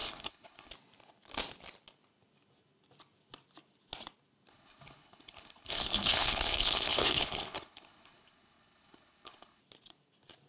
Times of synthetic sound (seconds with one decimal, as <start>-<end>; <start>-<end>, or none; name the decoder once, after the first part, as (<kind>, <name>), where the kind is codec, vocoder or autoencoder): 0.0-0.7 (codec, HILCodec); 4.5-9.6